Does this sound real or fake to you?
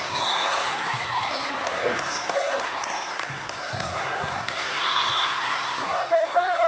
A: fake